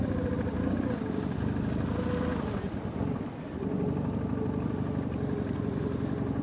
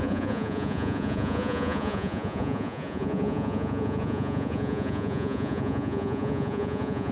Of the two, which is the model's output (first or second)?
second